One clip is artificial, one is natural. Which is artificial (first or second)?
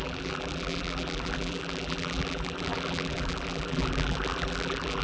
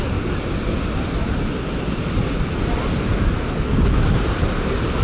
first